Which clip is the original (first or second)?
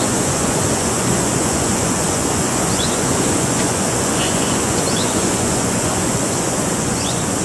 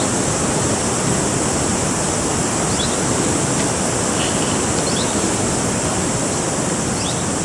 second